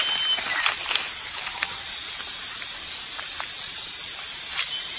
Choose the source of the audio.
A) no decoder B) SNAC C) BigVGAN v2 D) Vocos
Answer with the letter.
A